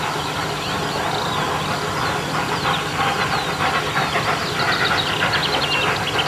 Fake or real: real